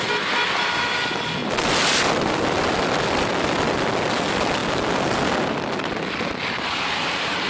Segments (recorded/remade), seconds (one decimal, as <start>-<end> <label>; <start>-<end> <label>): 0.0-7.5 recorded